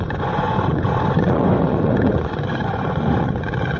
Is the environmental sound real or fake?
fake